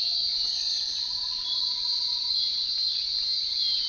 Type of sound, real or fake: real